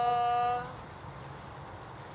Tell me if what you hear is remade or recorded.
recorded